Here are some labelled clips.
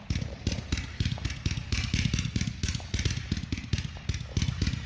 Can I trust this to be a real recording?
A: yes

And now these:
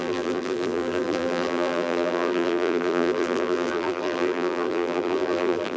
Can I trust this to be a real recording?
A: no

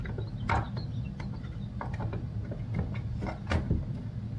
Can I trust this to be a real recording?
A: yes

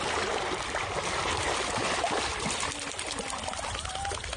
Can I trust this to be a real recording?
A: yes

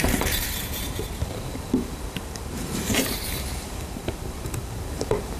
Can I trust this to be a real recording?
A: no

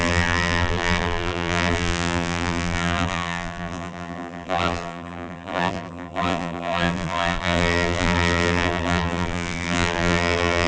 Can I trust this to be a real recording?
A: no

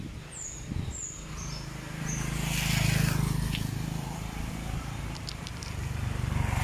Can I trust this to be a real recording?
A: yes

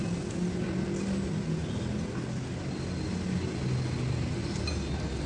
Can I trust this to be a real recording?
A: yes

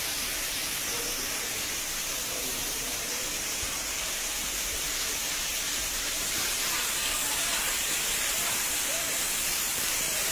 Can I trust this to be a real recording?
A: no